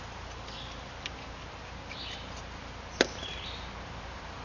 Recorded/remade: recorded